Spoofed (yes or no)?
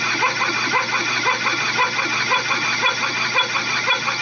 no